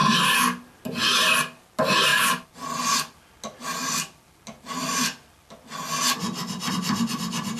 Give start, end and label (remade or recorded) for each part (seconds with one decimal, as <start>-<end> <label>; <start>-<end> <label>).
0.0-7.6 recorded